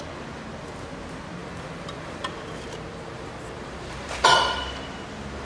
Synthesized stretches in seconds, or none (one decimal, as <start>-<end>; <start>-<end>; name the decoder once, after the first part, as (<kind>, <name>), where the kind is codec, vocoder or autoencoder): 1.4-4.6 (vocoder, BigVGAN v2)